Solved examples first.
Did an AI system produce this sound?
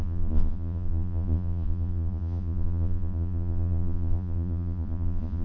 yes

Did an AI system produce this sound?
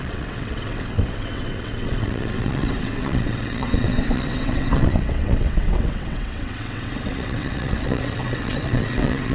yes